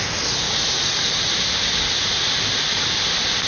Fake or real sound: real